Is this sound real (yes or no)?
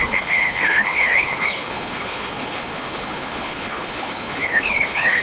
no